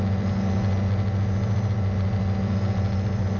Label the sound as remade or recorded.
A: recorded